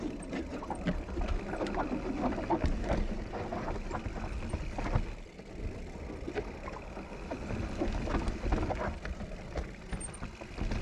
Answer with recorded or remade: recorded